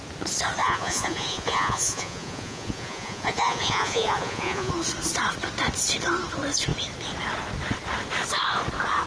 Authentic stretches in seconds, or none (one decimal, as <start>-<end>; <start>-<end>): 0.0-0.6; 4.7-9.1

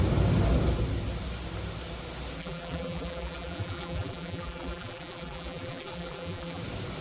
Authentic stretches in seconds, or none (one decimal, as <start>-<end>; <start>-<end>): 0.0-2.4; 6.6-7.0

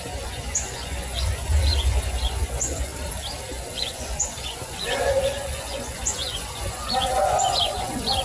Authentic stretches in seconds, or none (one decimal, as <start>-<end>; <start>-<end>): 2.9-3.5